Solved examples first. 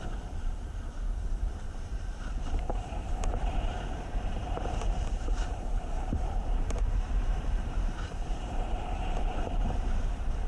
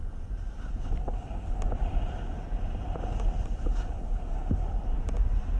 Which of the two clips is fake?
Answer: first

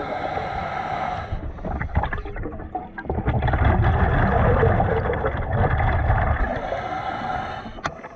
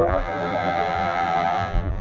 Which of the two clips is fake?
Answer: second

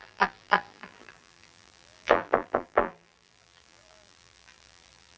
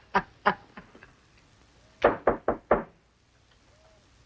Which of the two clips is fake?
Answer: first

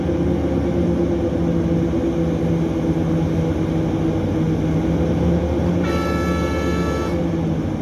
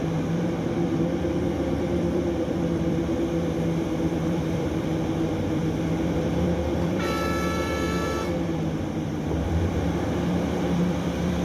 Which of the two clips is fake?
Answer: second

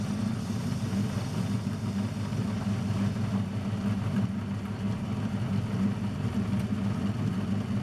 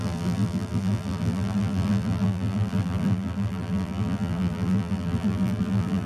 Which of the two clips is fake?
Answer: second